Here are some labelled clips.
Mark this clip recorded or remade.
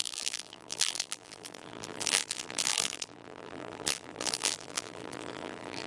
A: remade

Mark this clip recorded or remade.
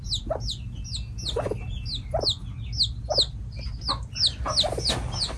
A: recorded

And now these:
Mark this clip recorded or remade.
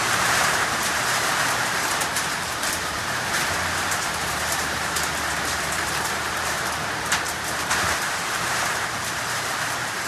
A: remade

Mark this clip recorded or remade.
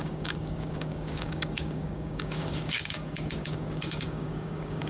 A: remade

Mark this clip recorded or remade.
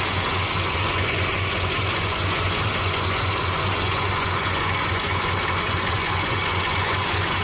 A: remade